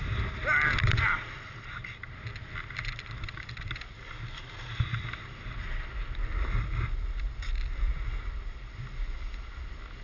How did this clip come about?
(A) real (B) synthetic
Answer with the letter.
A